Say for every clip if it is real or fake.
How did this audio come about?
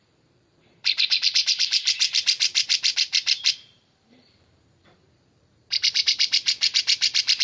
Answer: fake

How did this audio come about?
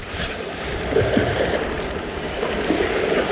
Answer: real